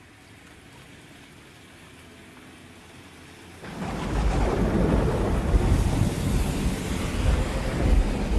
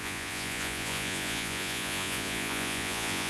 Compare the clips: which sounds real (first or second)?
first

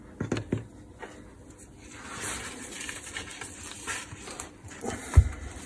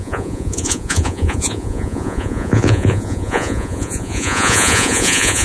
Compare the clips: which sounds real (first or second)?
first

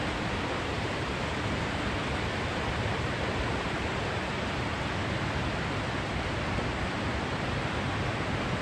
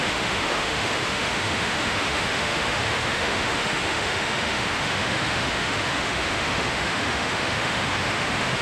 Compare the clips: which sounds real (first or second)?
first